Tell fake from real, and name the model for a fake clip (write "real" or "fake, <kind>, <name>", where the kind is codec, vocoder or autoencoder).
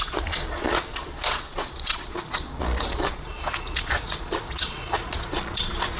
fake, vocoder, Vocos